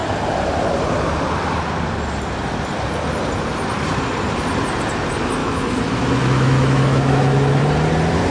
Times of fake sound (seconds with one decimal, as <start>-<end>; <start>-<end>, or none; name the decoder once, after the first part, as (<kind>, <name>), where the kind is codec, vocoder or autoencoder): 5.4-7.6 (autoencoder, DAC-VAE)